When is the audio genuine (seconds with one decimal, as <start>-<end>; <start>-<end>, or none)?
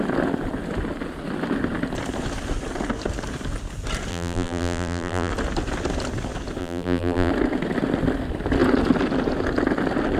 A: 0.0-4.1; 5.3-6.6; 7.3-10.2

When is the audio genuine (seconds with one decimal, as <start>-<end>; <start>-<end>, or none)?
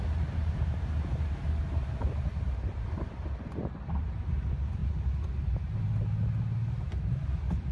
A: 0.0-0.4; 3.4-7.7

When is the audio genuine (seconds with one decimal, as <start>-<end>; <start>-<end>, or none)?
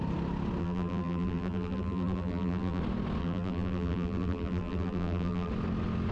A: 0.0-0.6; 2.8-3.2; 5.5-6.1